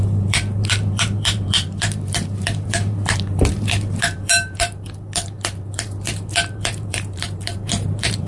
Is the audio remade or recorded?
remade